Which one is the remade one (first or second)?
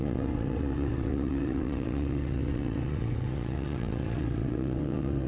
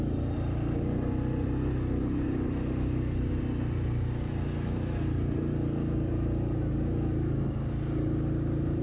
first